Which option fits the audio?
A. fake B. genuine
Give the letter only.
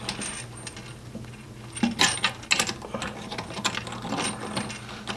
B